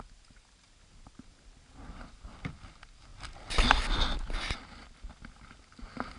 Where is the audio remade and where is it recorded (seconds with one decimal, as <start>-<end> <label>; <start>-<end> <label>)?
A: 0.0-6.2 recorded